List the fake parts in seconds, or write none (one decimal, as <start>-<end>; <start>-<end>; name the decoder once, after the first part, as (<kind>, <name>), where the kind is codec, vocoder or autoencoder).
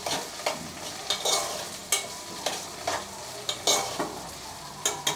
none